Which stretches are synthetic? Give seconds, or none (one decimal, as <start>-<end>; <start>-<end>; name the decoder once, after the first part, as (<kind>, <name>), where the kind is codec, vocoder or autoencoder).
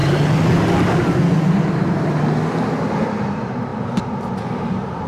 3.1-3.7 (vocoder, BigVGAN v2); 4.4-5.1